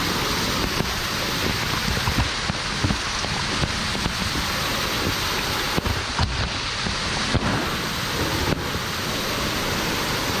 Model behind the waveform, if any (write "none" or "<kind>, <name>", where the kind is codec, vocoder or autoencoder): none